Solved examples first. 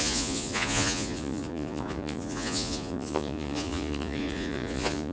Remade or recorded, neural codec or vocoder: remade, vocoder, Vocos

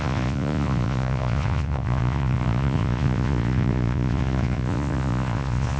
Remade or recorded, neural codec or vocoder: remade, vocoder, Vocos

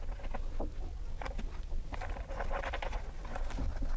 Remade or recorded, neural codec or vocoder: recorded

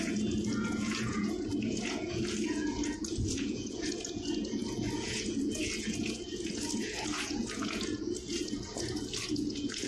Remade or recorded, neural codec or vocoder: remade, vocoder, Vocos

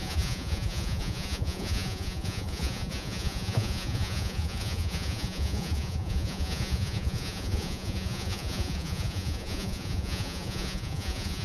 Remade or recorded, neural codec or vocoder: remade, vocoder, Vocos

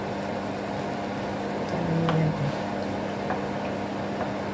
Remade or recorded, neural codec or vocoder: recorded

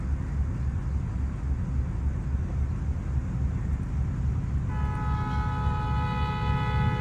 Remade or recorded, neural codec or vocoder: recorded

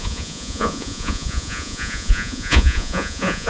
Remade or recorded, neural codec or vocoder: remade, vocoder, Vocos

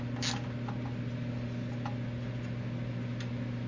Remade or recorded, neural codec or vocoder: recorded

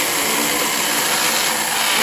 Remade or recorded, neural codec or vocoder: recorded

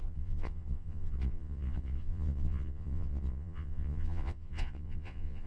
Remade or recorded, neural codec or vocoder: remade, vocoder, Vocos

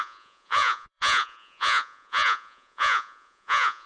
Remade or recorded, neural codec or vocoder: remade, vocoder, Vocos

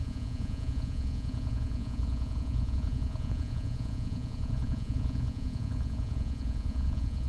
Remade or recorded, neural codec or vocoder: remade, vocoder, Vocos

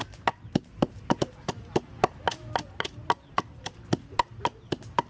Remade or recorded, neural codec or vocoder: recorded